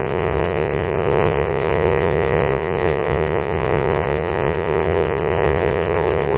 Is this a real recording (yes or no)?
no